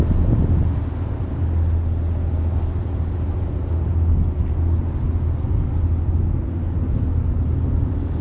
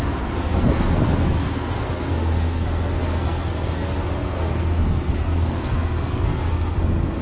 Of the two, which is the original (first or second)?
first